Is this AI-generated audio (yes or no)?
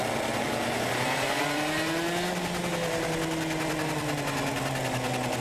no